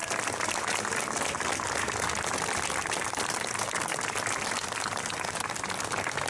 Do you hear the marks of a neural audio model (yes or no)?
no